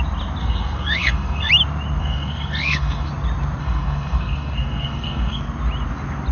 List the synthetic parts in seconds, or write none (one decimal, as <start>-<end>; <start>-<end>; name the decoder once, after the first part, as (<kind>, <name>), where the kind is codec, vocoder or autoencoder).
0.4-1.5 (codec, SNAC); 2.0-3.1; 3.6-5.4